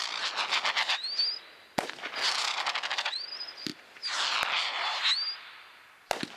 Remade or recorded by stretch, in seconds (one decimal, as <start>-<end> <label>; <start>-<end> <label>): 0.0-6.4 recorded